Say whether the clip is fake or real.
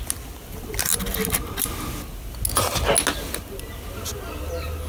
real